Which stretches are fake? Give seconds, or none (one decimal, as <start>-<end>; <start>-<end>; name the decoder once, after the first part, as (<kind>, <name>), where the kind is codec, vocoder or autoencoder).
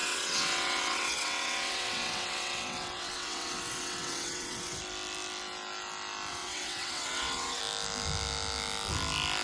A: 0.0-4.8 (vocoder, WaveNeXt); 6.3-7.6